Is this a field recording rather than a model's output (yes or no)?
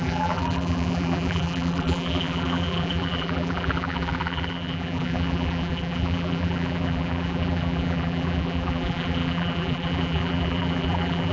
no